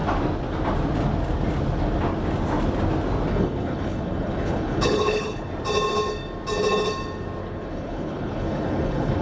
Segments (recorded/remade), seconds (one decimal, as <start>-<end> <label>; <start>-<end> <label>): 0.0-3.3 recorded; 3.3-5.5 remade; 5.5-7.4 recorded; 7.4-9.2 remade